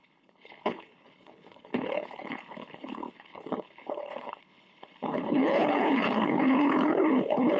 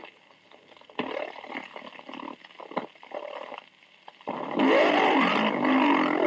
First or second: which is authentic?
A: second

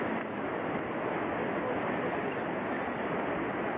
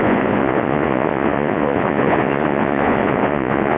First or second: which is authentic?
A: first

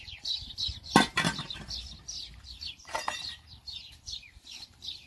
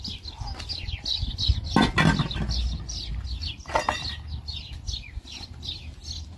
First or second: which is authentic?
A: second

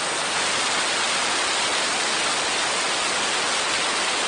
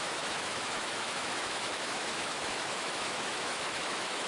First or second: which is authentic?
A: first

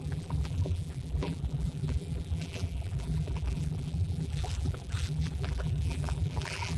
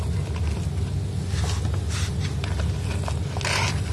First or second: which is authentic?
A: second